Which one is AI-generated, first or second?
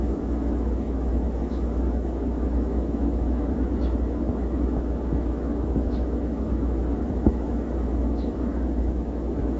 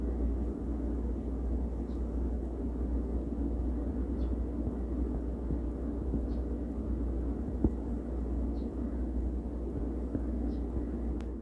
first